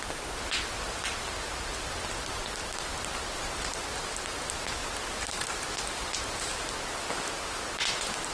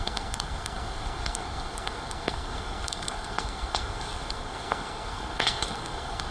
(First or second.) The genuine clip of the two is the first